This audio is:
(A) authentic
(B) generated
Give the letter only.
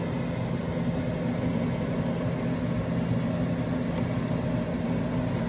A